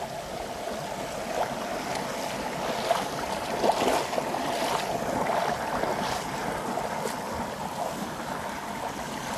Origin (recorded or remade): recorded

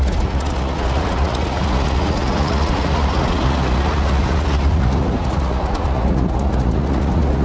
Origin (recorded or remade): remade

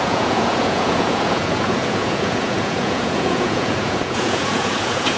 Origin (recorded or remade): remade